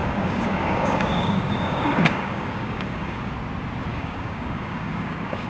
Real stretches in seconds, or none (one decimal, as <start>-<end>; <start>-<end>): 3.3-3.9